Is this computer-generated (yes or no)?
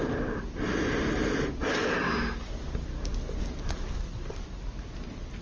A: no